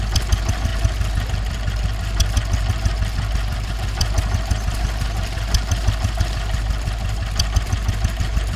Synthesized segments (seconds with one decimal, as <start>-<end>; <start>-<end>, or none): none